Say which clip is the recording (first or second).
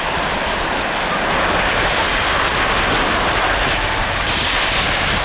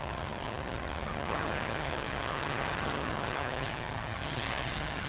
first